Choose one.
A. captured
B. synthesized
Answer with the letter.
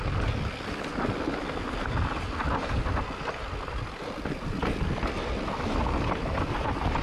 A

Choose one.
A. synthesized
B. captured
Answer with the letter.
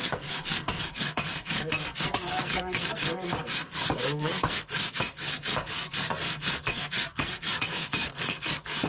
A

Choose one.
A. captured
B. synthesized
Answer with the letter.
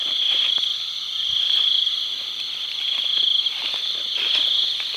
A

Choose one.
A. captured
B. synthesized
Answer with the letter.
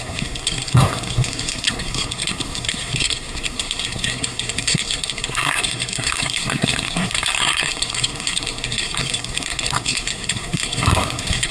B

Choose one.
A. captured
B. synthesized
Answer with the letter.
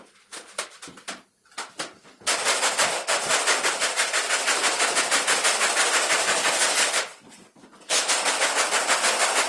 A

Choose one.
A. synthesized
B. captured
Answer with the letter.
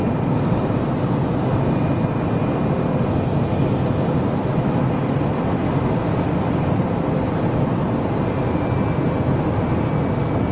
B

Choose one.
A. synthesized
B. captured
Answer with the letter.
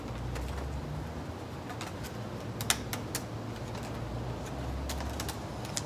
B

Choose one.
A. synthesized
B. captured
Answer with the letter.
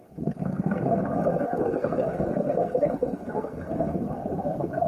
A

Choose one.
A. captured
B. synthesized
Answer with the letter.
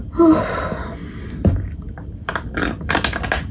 A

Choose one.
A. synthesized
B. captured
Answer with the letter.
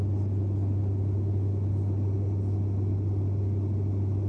B